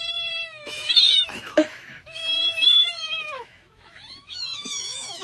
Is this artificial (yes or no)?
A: yes